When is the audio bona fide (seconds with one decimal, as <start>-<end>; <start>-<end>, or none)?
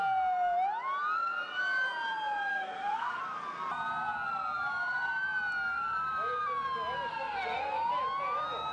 0.0-2.5; 3.2-7.1; 7.9-8.7